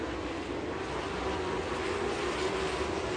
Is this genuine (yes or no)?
yes